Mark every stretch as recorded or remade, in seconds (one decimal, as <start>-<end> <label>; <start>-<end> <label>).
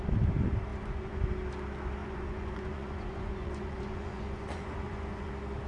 0.0-0.7 recorded; 0.7-1.3 remade; 1.3-2.0 recorded; 2.0-5.3 remade; 5.3-5.7 recorded